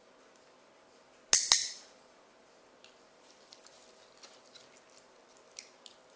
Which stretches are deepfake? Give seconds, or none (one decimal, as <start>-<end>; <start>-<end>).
none